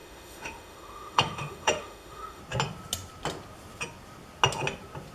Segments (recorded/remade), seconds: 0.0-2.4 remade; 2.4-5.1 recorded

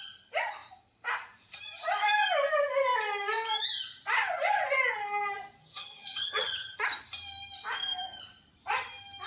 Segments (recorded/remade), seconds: 0.0-5.6 recorded; 5.6-6.8 remade; 6.8-9.3 recorded

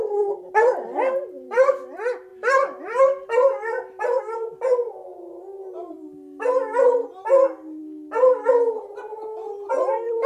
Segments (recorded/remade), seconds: 0.0-10.3 recorded